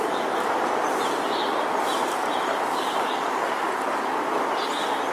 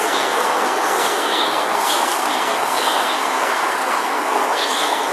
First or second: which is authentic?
first